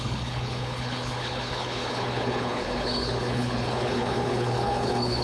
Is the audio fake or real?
fake